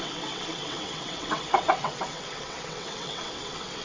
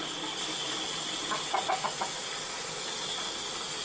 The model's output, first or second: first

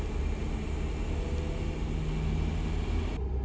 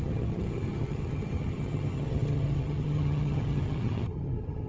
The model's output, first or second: second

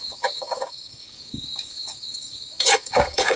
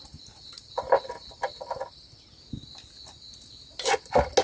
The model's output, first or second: first